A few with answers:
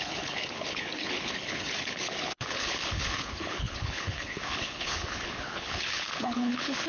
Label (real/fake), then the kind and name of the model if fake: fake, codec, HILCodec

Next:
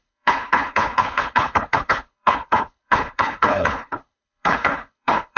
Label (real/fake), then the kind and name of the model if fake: fake, codec, HILCodec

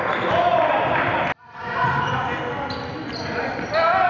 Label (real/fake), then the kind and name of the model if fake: real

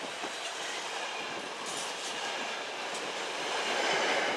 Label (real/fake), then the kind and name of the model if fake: real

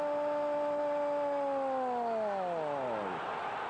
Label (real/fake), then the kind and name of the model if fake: real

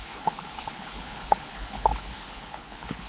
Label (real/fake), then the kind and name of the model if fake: fake, codec, HILCodec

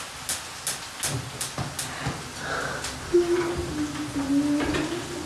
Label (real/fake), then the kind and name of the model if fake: real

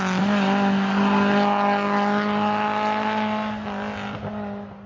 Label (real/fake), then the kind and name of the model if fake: real